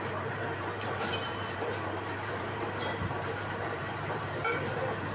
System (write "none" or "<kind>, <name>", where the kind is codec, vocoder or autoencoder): vocoder, BigVGAN v2